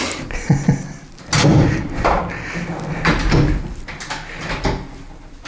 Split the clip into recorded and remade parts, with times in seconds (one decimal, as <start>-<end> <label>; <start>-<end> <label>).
0.0-1.5 recorded; 1.5-2.2 remade; 2.2-5.5 recorded